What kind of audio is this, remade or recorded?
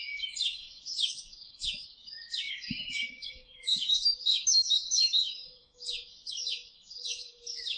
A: remade